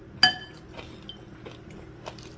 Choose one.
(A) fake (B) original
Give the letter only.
B